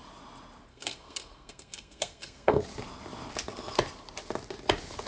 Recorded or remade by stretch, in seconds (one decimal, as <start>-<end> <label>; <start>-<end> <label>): 0.0-0.7 recorded; 0.7-2.6 remade; 2.6-5.1 recorded